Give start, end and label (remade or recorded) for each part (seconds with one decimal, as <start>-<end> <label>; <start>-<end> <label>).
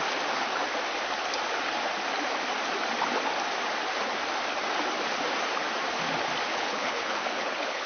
0.0-6.5 recorded; 6.5-7.9 remade